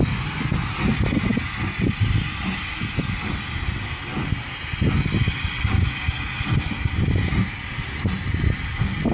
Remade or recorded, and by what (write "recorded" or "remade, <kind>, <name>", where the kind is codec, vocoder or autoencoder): recorded